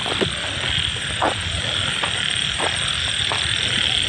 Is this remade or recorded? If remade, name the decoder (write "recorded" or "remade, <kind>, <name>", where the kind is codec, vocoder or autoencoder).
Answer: recorded